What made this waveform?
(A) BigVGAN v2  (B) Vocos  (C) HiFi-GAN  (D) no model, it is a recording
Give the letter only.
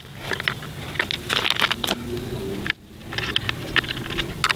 D